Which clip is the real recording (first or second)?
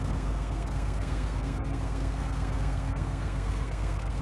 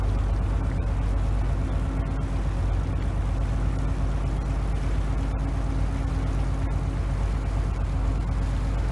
second